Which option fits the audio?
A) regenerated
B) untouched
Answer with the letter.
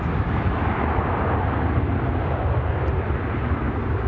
B